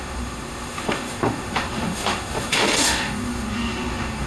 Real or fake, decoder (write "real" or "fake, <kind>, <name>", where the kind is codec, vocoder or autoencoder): fake, autoencoder, DAC-VAE